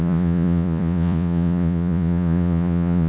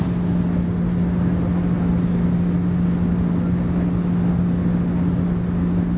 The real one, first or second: second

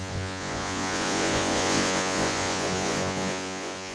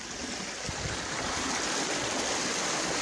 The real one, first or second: second